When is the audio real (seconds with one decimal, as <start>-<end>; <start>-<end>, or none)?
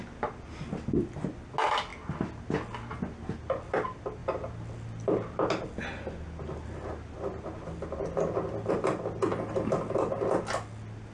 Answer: 0.0-11.1